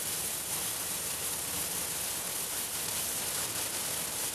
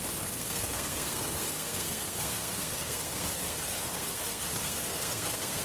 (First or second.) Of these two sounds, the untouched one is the first